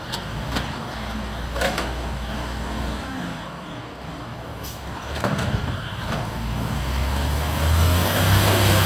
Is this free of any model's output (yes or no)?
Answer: no